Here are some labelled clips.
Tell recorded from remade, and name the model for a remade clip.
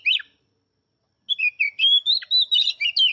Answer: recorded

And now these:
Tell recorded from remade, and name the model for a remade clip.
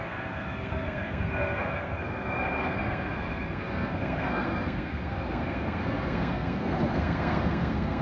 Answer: remade, codec, SNAC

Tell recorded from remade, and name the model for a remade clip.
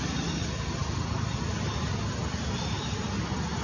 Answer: recorded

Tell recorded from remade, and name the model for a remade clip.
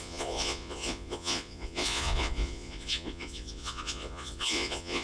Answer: remade, vocoder, Vocos